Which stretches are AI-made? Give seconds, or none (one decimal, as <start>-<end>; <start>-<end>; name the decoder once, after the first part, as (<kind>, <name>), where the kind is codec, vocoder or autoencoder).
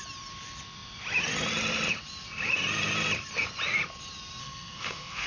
4.4-5.3 (codec, SNAC)